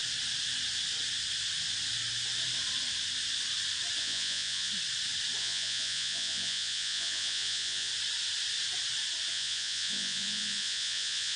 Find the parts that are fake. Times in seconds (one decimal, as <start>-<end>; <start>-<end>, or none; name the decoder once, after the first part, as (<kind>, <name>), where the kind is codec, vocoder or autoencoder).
4.0-4.7 (vocoder, Vocos); 5.4-7.9; 9.3-11.4